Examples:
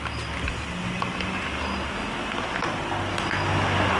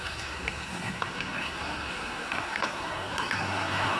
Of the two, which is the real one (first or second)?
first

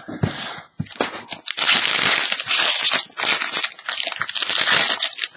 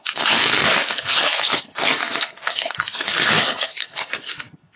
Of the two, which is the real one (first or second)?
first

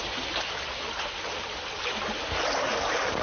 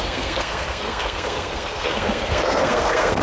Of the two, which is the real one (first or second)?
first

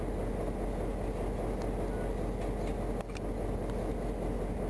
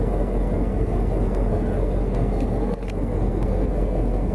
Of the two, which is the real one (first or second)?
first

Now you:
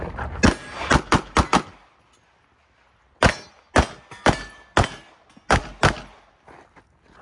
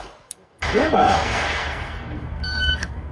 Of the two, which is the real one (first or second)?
first